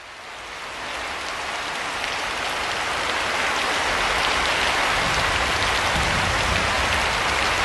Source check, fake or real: real